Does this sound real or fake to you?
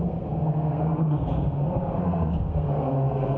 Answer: fake